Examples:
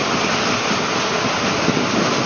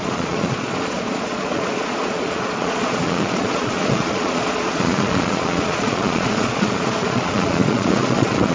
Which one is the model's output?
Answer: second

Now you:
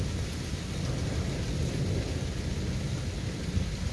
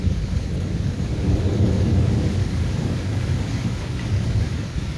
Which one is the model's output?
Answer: second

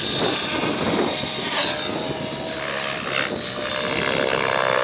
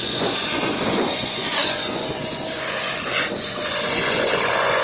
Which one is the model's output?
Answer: second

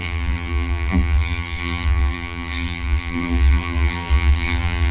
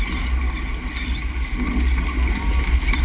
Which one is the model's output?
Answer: first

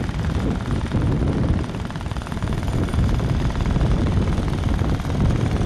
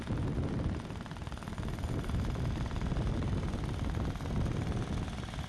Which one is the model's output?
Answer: first